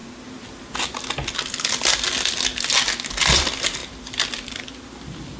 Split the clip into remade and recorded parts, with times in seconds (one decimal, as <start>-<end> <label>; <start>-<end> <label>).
0.0-3.8 recorded; 3.8-4.7 remade; 4.7-5.4 recorded